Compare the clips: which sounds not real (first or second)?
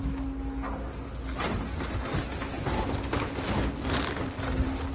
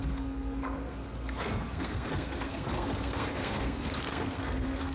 second